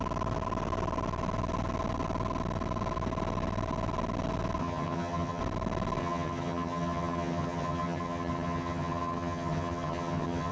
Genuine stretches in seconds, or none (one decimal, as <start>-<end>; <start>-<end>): 0.0-4.6; 5.4-6.0